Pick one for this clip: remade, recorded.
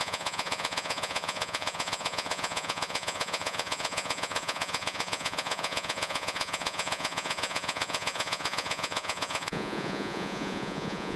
remade